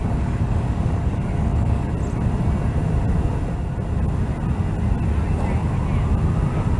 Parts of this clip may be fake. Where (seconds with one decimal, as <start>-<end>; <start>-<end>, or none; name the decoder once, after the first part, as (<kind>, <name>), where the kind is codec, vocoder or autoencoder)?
0.0-1.9 (codec, DAC)

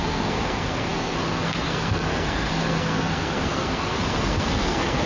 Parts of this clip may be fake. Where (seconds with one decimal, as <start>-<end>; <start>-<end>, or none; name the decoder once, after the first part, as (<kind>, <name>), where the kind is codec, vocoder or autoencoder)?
0.0-5.1 (codec, SNAC)

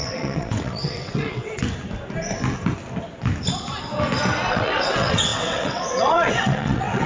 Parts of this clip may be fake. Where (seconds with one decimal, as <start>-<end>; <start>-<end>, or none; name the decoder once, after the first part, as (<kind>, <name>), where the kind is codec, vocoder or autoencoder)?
0.0-1.6 (vocoder, WaveNeXt); 4.5-7.1

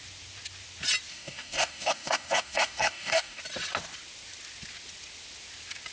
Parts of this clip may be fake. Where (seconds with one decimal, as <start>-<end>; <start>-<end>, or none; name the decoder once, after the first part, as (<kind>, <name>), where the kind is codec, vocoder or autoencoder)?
1.1-3.4 (codec, DAC)